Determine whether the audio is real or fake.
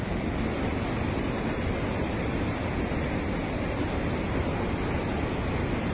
real